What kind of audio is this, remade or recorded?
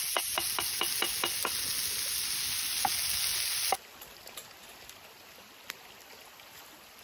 recorded